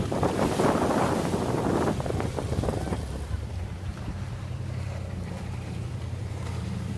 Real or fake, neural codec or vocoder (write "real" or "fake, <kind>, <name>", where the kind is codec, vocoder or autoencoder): fake, vocoder, BigVGAN v2